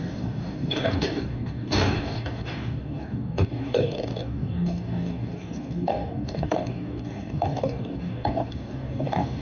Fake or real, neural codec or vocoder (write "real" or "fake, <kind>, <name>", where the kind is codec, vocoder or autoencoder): fake, codec, DAC